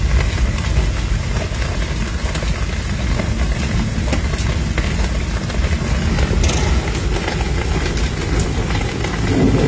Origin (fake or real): real